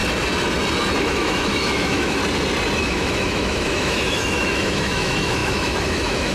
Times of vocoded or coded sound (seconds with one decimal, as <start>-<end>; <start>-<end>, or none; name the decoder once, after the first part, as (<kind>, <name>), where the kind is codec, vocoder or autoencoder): 1.0-2.2 (autoencoder, DAC-VAE); 2.8-6.3